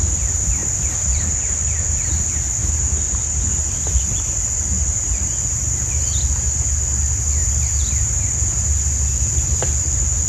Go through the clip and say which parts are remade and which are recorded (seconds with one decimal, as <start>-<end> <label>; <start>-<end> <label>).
0.0-10.3 recorded